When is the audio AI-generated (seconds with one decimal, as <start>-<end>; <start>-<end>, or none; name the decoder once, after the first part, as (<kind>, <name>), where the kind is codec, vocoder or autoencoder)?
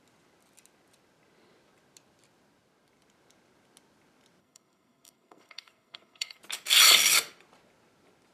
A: 4.4-6.4 (codec, SNAC)